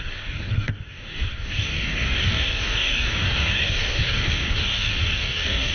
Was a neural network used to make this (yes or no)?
yes